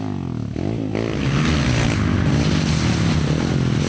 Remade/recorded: recorded